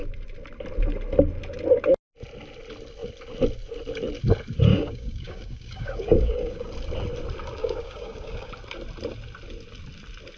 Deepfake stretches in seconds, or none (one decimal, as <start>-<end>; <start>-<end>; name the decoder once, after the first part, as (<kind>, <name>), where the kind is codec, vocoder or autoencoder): 4.7-6.7 (codec, DAC); 7.6-8.5